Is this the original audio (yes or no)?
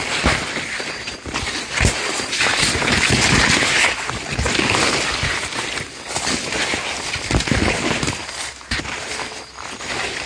yes